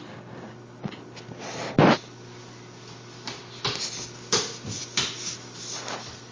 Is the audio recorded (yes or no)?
yes